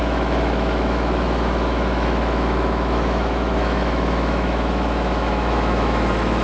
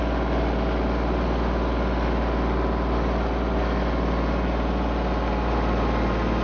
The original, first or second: second